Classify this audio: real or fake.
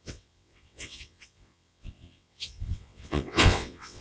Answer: fake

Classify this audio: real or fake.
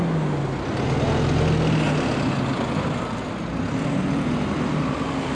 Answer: real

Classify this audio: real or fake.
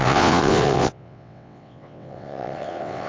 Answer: fake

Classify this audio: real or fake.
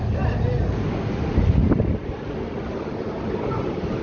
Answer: real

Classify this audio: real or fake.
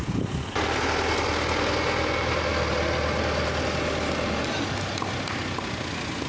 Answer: real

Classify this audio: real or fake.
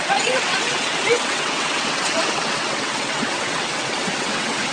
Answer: fake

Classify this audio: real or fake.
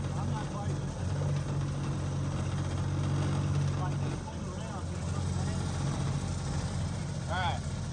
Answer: real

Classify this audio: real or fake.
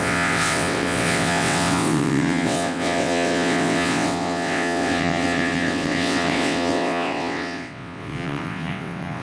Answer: fake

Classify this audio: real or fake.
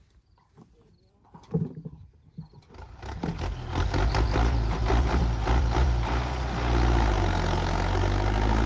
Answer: real